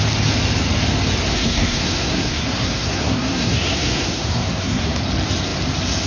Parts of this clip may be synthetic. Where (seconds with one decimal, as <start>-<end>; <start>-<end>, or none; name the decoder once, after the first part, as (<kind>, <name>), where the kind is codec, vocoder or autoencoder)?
1.3-5.0 (codec, SNAC)